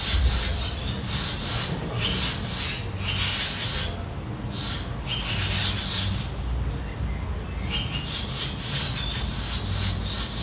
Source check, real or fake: real